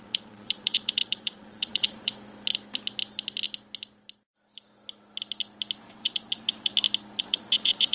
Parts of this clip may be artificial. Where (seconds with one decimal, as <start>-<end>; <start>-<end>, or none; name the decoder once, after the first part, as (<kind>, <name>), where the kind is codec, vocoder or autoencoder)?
0.0-2.1 (vocoder, Vocos); 5.8-6.7; 7.2-7.9